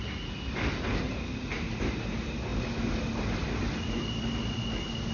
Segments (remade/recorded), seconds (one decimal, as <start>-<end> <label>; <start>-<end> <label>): 0.0-5.1 recorded